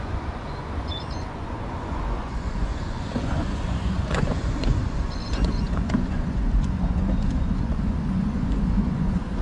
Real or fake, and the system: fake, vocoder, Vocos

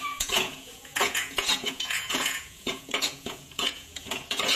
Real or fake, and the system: fake, vocoder, Vocos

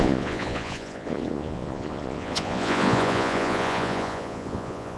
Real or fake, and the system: fake, vocoder, Vocos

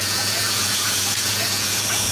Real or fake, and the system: fake, vocoder, Vocos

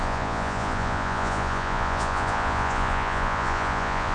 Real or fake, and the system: fake, vocoder, Vocos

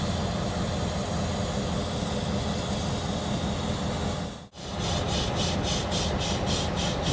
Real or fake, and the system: real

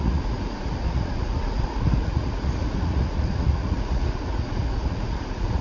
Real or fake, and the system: fake, vocoder, Vocos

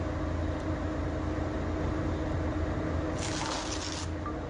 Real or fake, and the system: real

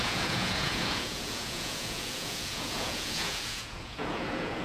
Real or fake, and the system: fake, vocoder, Vocos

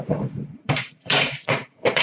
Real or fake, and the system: fake, vocoder, Vocos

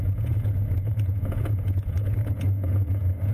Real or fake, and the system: fake, vocoder, Vocos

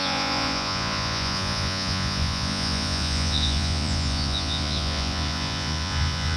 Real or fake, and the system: fake, vocoder, Vocos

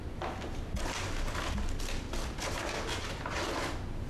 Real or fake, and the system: real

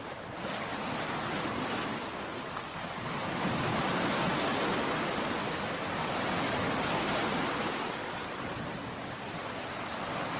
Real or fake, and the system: real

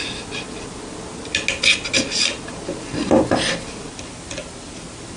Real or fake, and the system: real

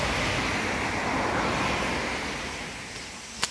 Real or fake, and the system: real